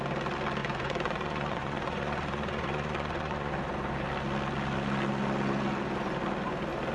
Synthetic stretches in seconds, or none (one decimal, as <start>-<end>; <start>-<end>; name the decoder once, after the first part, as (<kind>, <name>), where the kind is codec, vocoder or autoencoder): 0.6-3.5 (vocoder, Vocos)